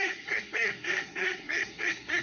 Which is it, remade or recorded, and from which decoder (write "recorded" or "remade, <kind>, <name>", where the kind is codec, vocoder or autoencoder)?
remade, codec, SNAC